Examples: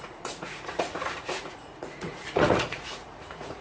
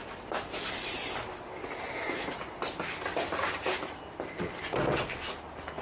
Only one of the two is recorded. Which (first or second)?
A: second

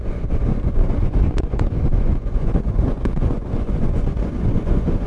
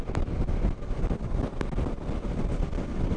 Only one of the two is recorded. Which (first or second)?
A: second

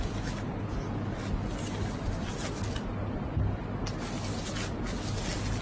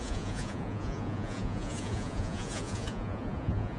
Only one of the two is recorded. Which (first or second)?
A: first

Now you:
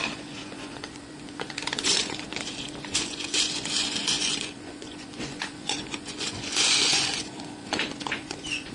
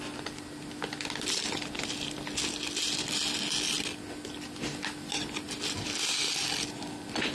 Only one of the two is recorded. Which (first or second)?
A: second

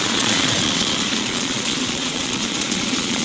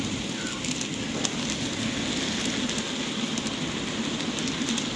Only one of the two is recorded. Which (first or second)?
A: second